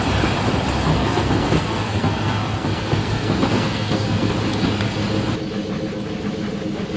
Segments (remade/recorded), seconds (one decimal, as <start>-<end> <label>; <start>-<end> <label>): 0.0-0.9 recorded; 0.9-4.3 remade; 4.3-7.0 recorded